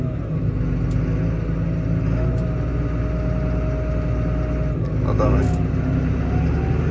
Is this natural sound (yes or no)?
yes